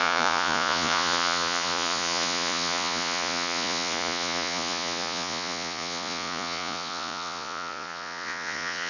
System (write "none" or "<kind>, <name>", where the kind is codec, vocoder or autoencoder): vocoder, Vocos